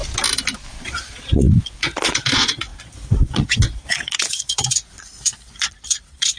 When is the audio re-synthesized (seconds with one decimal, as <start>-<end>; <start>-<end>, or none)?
0.7-6.4